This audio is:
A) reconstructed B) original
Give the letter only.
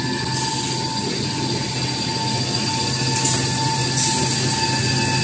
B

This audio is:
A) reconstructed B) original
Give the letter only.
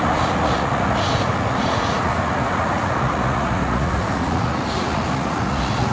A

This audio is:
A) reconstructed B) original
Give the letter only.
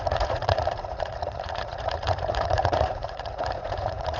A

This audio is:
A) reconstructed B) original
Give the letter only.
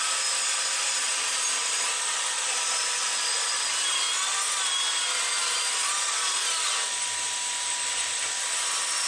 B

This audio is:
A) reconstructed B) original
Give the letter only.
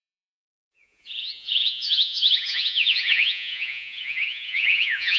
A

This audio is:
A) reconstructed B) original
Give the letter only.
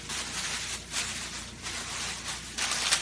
B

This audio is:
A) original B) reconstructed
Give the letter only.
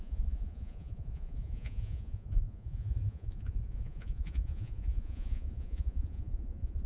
B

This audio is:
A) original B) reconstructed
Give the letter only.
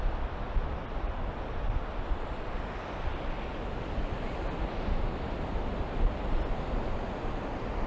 A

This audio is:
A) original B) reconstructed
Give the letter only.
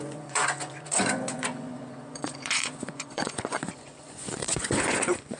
B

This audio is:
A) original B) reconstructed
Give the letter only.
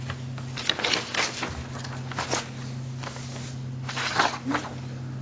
A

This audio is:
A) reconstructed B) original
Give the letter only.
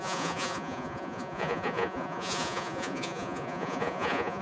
A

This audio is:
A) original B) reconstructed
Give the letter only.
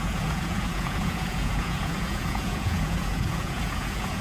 B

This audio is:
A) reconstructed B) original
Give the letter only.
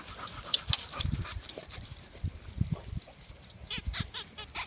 B